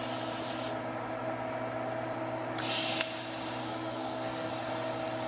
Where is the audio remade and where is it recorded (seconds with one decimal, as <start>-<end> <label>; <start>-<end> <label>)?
0.0-3.6 recorded; 3.6-4.5 remade; 4.5-5.3 recorded